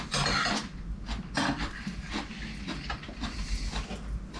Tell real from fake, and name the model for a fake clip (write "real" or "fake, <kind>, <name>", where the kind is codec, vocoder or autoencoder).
real